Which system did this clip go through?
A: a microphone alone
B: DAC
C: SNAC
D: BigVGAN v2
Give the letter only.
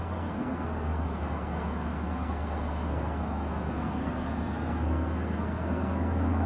C